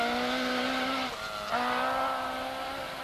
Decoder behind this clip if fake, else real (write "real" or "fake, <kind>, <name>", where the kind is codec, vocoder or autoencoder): real